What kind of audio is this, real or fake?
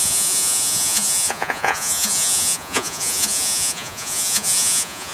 fake